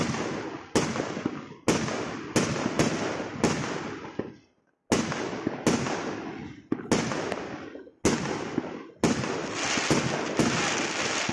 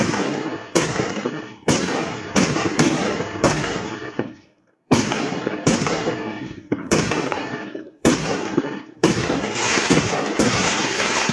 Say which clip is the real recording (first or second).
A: first